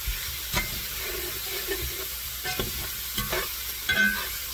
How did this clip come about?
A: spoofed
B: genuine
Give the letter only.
B